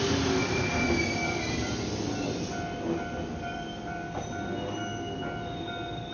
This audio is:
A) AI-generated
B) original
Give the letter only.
B